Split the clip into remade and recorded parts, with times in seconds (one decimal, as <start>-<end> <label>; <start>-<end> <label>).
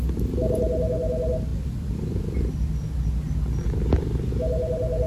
0.0-5.1 recorded